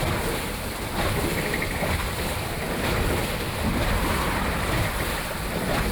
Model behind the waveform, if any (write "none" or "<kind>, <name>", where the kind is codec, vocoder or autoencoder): vocoder, BigVGAN v2